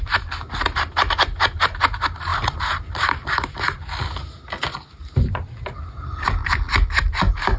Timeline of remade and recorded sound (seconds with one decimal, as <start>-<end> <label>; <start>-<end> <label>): 0.0-7.6 recorded